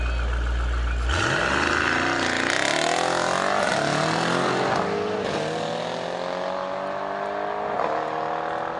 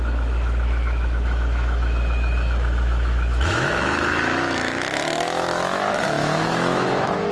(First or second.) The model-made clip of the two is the second